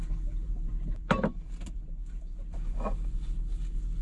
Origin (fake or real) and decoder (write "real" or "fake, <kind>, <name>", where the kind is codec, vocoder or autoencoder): fake, vocoder, BigVGAN v2